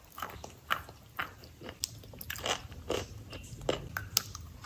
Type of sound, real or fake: real